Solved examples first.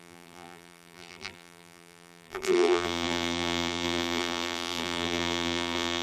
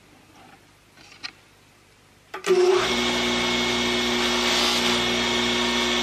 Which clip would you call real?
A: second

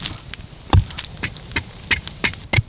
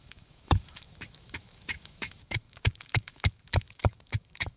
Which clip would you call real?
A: first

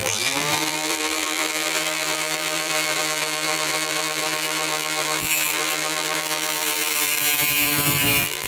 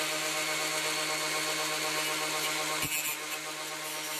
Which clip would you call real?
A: second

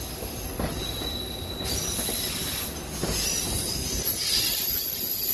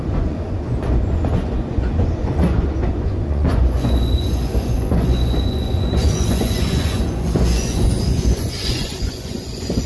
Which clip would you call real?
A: first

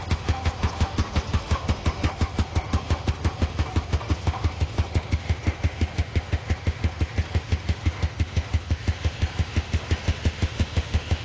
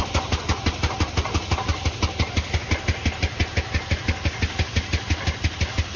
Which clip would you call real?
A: second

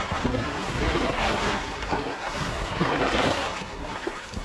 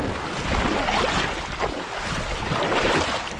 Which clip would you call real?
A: second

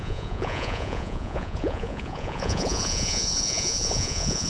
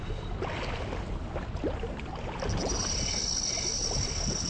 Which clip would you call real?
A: second